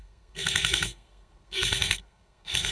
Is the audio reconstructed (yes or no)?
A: yes